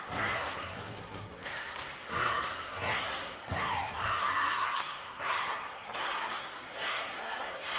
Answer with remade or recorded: remade